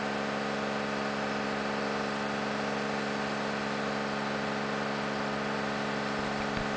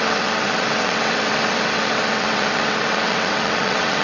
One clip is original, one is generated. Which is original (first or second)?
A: first